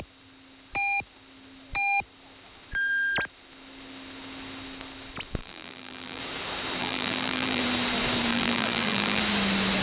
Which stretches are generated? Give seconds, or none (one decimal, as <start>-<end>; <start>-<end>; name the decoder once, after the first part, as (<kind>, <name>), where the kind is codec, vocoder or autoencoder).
5.4-6.2 (vocoder, BigVGAN v2); 6.8-7.6; 8.3-9.2